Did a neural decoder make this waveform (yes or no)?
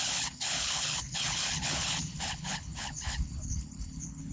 yes